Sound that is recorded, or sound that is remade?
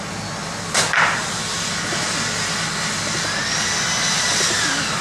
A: recorded